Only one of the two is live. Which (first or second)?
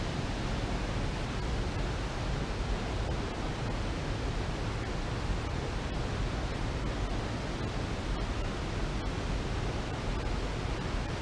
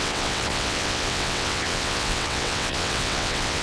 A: first